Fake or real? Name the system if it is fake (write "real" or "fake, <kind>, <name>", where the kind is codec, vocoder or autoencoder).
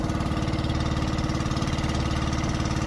real